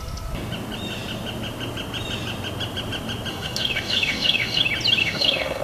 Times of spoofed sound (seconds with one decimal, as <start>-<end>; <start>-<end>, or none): 3.3-4.6; 5.0-5.6